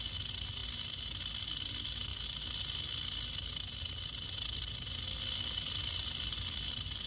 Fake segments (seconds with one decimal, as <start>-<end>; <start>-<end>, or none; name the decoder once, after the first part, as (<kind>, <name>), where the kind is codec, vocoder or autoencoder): none